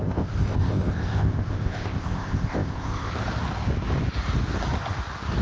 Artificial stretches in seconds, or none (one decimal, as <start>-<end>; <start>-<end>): 0.0-3.2